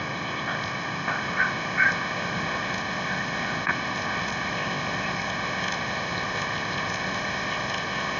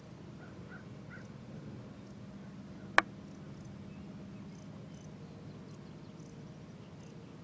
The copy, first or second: first